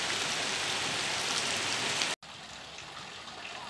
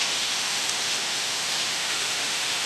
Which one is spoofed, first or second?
second